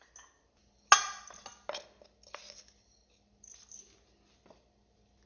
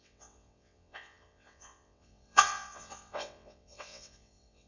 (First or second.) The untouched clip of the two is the first